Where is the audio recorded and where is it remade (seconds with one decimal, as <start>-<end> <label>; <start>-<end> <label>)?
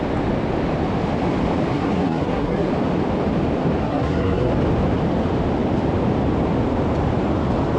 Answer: 0.0-1.7 recorded; 1.7-2.7 remade; 2.7-3.8 recorded; 3.8-4.5 remade; 4.5-7.8 recorded